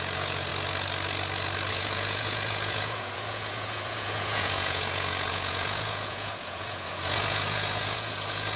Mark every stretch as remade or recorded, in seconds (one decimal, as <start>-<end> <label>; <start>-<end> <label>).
0.0-0.5 remade; 0.5-1.7 recorded; 1.7-8.6 remade